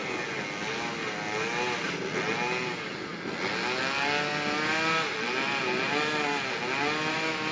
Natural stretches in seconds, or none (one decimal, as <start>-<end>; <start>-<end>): 0.0-7.5

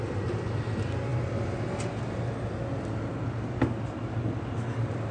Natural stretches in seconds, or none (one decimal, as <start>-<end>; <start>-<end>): 0.0-5.1